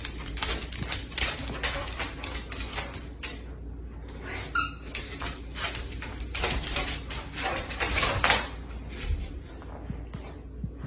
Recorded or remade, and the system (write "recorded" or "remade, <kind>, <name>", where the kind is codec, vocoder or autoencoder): recorded